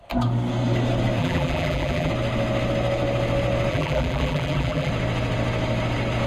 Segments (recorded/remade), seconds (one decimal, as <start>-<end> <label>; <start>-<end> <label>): 0.0-1.2 recorded; 1.2-2.1 remade; 2.1-3.7 recorded; 3.7-4.9 remade; 4.9-6.3 recorded